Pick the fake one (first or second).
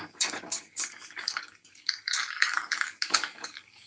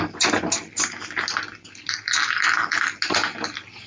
first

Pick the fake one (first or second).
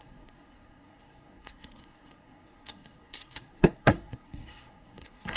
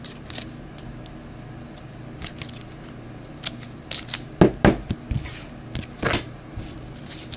first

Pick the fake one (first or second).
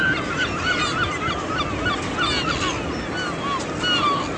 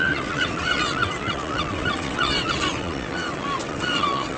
second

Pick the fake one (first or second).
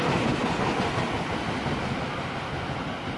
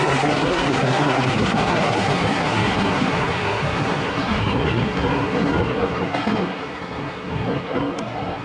second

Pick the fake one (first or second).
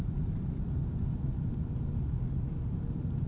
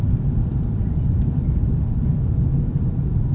second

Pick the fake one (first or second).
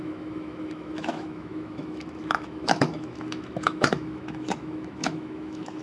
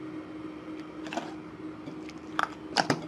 first